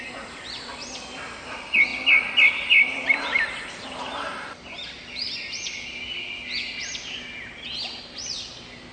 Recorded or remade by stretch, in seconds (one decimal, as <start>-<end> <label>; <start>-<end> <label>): 0.0-8.9 recorded

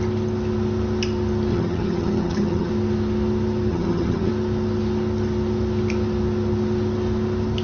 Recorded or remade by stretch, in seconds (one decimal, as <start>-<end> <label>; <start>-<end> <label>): 0.0-1.5 recorded; 1.5-2.7 remade; 2.7-3.7 recorded; 3.7-4.3 remade; 4.3-7.6 recorded

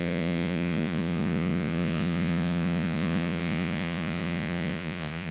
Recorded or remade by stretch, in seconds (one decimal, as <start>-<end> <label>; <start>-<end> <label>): 0.0-5.3 remade

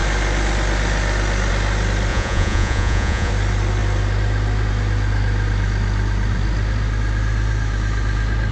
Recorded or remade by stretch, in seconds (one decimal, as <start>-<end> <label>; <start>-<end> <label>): 0.0-2.1 recorded; 2.1-3.3 remade; 3.3-8.5 recorded